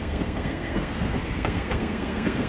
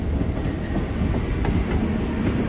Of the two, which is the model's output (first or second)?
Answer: first